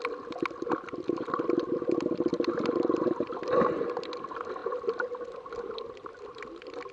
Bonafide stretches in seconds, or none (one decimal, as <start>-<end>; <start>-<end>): 0.0-6.9

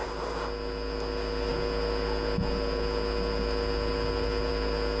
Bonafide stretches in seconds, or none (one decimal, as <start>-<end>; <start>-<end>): 0.0-5.0